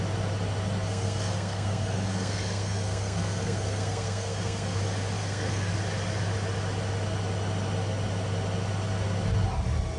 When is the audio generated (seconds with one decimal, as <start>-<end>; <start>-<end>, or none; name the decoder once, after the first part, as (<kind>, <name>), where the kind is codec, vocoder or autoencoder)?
0.9-4.8 (codec, SNAC); 5.2-5.7